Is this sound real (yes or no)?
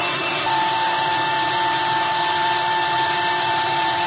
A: no